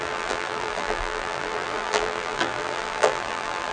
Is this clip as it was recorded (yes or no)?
no